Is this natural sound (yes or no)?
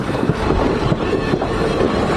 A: no